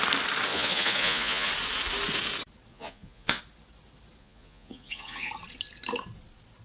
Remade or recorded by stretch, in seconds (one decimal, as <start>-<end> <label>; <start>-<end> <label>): 0.0-0.5 recorded; 0.5-1.5 remade; 1.5-2.7 recorded; 2.7-3.4 remade; 3.4-4.2 recorded; 4.2-5.3 remade; 5.3-6.6 recorded